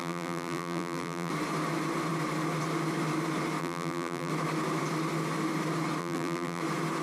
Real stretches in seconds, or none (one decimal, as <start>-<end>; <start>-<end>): 1.3-3.6; 4.3-6.0; 6.6-7.0